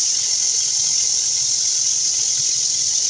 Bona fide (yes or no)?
yes